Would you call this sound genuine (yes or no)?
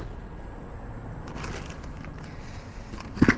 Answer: yes